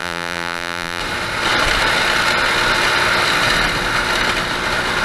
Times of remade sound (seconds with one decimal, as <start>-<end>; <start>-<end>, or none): 0.0-1.0